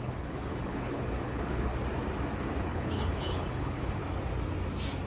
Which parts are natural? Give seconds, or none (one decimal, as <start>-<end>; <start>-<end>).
1.7-2.6; 4.0-5.1

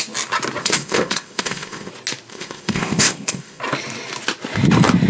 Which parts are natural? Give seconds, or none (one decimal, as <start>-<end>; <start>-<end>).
0.0-0.6; 1.9-2.3; 3.6-5.1

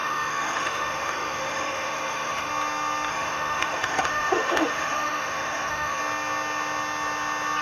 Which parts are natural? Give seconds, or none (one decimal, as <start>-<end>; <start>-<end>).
2.5-3.1; 6.0-7.6

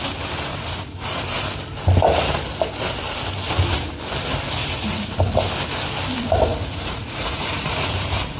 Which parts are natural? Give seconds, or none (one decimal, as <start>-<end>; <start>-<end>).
0.0-0.5; 1.2-4.6; 5.2-6.5

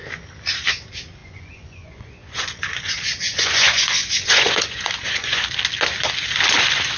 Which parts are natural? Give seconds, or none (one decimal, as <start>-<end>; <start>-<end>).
0.0-1.2; 5.4-7.0

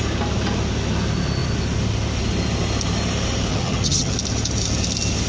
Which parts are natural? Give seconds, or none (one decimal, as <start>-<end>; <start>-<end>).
0.0-3.5; 4.1-5.3

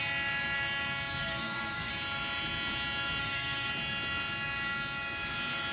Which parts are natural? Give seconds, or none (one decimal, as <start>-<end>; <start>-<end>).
0.0-1.2; 1.9-3.2; 3.7-5.7